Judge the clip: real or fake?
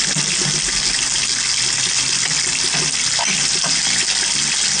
real